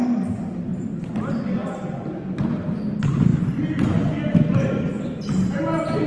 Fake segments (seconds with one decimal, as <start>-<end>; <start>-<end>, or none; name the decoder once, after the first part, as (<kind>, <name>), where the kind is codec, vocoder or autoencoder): none